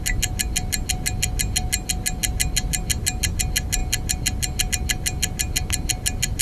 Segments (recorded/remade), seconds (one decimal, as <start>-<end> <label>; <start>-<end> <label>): 0.0-6.4 recorded